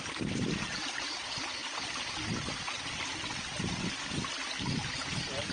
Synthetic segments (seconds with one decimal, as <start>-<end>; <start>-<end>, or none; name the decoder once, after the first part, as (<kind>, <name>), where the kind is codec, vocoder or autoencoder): none